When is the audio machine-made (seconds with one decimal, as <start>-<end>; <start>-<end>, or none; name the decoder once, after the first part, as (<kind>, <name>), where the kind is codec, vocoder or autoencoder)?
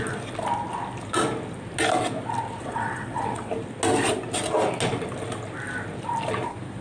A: 2.6-3.5 (vocoder, WaveNeXt)